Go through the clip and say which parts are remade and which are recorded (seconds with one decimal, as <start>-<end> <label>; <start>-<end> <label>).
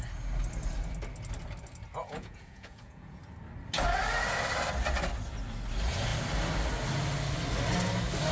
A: 0.0-2.0 recorded; 2.0-3.2 remade; 3.2-8.3 recorded